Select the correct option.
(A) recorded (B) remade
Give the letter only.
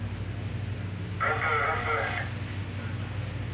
A